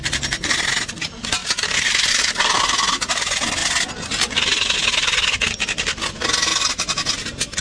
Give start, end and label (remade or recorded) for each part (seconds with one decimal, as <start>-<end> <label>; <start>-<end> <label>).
0.0-7.6 recorded